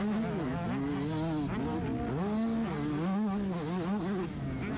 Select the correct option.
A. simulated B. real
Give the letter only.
B